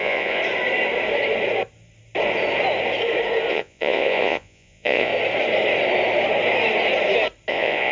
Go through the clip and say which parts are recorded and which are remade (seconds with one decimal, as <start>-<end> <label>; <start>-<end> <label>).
0.0-0.4 remade; 0.4-3.5 recorded; 3.5-5.1 remade; 5.1-7.5 recorded; 7.5-7.9 remade